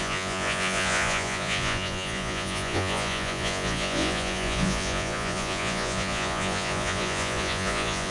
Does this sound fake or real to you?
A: fake